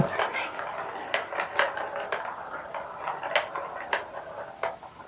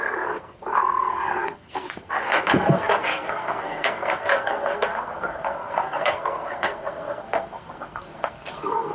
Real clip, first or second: first